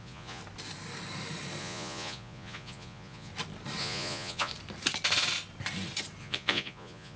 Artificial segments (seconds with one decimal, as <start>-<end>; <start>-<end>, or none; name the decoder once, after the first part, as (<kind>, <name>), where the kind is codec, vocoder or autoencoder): 0.0-0.4 (vocoder, Vocos); 1.6-3.3; 3.8-4.5; 6.2-7.2